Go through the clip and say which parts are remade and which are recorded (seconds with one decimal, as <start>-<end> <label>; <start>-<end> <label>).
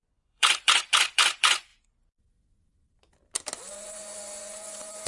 0.0-1.7 remade; 1.7-3.7 recorded; 3.7-5.1 remade